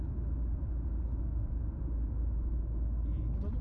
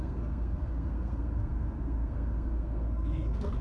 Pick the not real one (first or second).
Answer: second